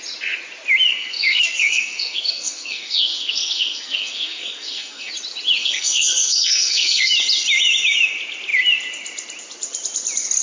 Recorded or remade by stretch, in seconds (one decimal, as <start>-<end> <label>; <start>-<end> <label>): 0.0-0.9 recorded; 0.9-5.1 remade; 5.1-5.6 recorded; 5.6-7.1 remade; 7.1-10.4 recorded